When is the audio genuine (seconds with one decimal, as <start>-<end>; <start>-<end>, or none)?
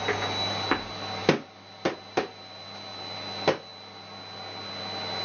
0.0-5.2